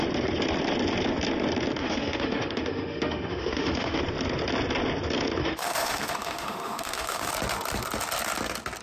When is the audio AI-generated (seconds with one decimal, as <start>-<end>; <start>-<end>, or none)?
1.8-4.0; 5.4-7.3